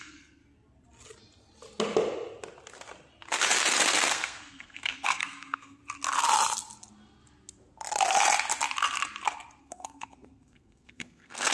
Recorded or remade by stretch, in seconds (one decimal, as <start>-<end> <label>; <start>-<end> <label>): 0.0-0.4 remade; 0.4-4.1 recorded; 4.1-5.8 remade; 5.8-9.6 recorded; 9.6-11.5 remade